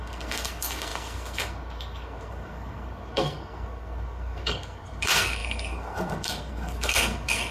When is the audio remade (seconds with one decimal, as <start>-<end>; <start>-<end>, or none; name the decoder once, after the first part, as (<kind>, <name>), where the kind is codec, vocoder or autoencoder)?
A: 0.0-7.5 (codec, SNAC)